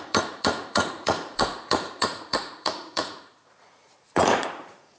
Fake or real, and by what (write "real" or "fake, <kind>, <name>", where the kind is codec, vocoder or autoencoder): fake, vocoder, Vocos